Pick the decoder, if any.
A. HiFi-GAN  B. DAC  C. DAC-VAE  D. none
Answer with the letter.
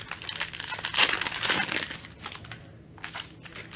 D